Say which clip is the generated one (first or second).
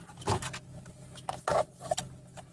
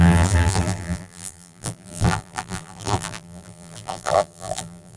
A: second